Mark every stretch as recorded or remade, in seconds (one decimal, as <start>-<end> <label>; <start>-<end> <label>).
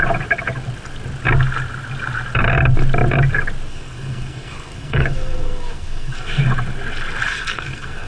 0.0-3.7 recorded; 3.7-6.4 remade; 6.4-7.3 recorded; 7.3-8.1 remade